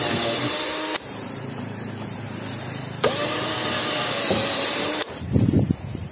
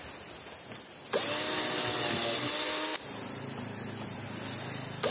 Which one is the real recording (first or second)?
second